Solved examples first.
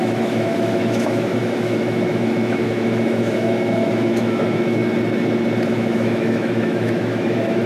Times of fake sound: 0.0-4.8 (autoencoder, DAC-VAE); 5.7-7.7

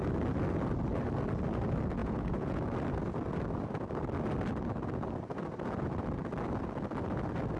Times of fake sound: 2.0-2.6 (vocoder, Vocos)

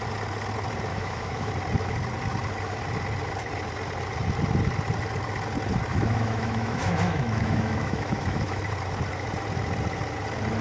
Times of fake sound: 0.9-1.5 (autoencoder, DAC-VAE); 5.9-8.6

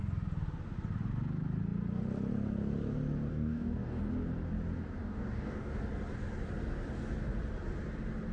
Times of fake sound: 3.3-4.0 (codec, DAC); 5.0-5.8

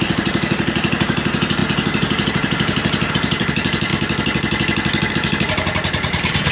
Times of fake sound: 0.0-3.9 (vocoder, BigVGAN v2); 5.1-6.5